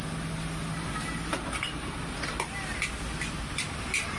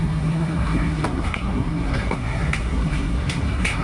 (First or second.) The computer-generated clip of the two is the second